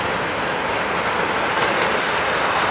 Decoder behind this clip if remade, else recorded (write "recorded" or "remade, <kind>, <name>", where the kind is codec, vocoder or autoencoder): recorded